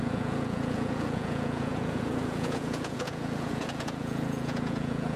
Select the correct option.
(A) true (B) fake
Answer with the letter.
B